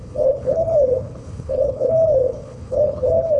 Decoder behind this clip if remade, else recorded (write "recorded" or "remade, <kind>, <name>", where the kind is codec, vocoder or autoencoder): remade, codec, HILCodec